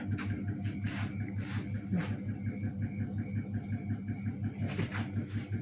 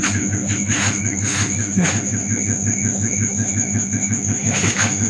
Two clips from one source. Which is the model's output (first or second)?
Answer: second